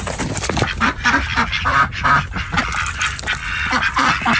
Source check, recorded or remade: remade